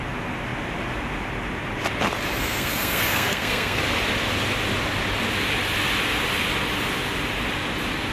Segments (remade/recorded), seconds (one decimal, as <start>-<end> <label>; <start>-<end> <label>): 0.0-2.4 recorded; 2.4-3.8 remade; 3.8-8.1 recorded